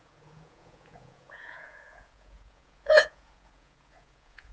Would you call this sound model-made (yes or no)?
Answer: yes